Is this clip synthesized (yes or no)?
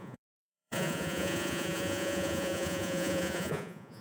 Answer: yes